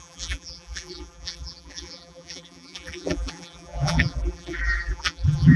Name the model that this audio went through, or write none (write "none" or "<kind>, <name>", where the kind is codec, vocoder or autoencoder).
vocoder, BigVGAN v2